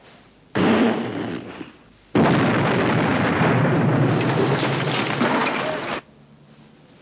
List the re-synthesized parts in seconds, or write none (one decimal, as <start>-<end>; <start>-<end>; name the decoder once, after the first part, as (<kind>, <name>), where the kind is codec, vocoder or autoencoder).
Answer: 3.1-4.1 (vocoder, BigVGAN v2); 5.4-5.9